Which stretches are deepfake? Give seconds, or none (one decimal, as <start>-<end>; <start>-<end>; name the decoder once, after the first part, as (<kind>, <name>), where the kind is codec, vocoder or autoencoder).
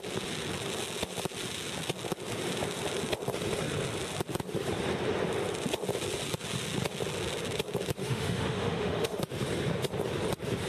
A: 8.0-9.2 (autoencoder, DAC-VAE)